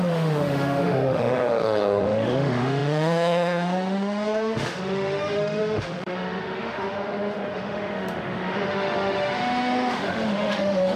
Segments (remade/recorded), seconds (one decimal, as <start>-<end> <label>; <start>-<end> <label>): 0.0-11.0 remade